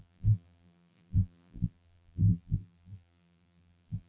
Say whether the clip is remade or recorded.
remade